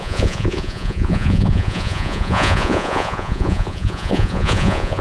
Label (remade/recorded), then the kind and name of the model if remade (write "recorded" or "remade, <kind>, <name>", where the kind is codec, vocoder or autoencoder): remade, vocoder, Vocos